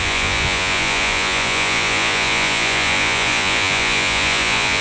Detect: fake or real fake